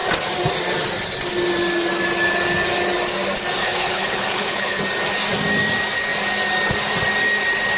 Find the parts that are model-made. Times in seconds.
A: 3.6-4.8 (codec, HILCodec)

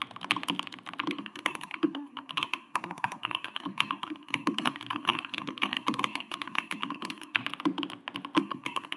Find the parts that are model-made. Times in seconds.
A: 1.1-7.4 (codec, SNAC); 8.4-9.0